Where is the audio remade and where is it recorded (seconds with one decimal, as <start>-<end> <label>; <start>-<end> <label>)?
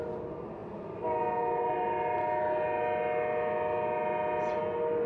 0.0-5.1 recorded